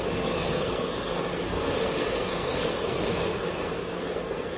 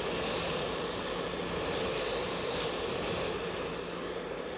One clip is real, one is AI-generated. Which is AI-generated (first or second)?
first